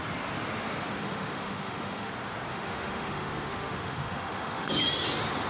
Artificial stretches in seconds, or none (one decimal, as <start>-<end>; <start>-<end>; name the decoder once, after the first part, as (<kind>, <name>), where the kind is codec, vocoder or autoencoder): 1.0-2.1 (autoencoder, DAC-VAE); 2.5-4.7